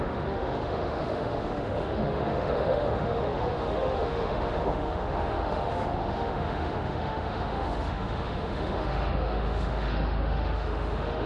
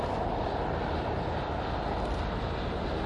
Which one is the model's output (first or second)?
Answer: first